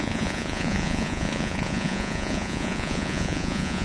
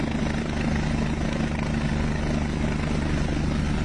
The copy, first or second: first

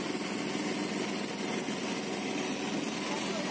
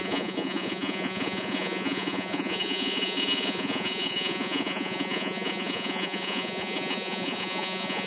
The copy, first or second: second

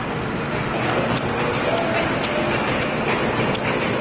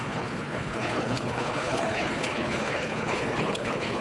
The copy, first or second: second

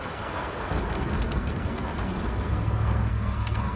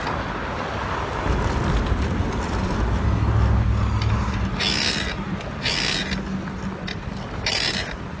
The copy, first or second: first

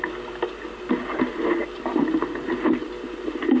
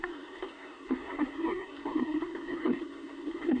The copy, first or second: second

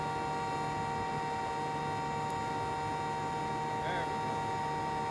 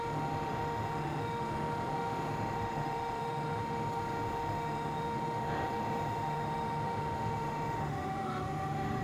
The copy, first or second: second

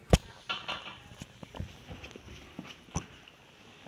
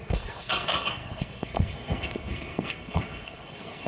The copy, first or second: second